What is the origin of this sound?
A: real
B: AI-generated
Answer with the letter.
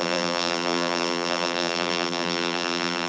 B